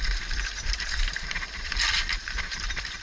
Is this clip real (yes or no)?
no